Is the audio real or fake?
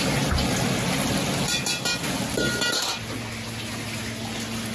real